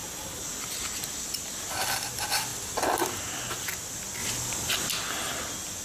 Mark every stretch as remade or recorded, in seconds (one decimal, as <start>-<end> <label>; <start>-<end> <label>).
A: 0.0-5.8 recorded